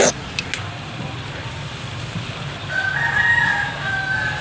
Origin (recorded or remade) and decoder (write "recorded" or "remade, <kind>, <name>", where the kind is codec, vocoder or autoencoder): recorded